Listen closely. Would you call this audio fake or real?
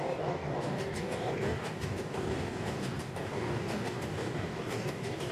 fake